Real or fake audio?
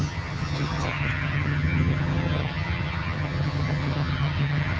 fake